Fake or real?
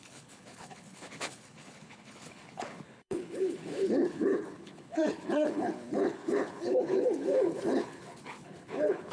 fake